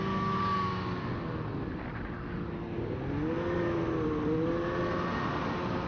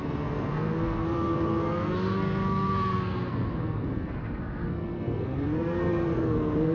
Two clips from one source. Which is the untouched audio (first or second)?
first